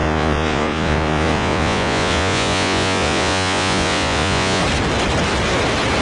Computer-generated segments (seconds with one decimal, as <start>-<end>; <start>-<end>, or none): 0.0-4.6